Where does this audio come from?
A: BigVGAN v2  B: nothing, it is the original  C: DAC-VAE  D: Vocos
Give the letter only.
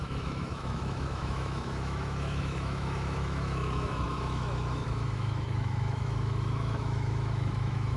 C